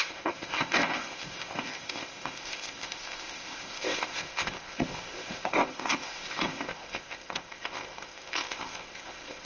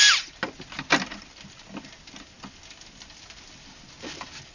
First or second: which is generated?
first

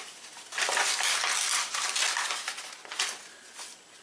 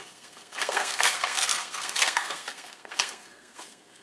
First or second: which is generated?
second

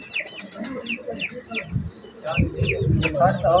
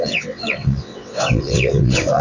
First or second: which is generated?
second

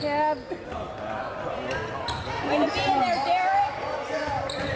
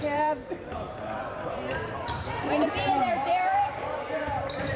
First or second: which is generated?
second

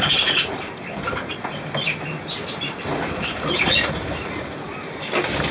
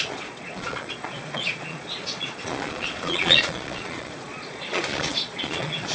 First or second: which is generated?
second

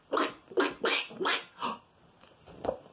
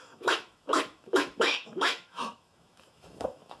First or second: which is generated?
second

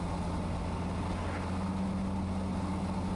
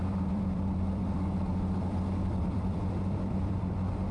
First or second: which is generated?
second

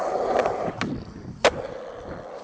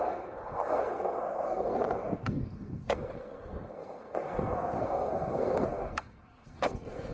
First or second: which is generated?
second